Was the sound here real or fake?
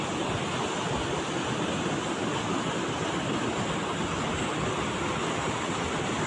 real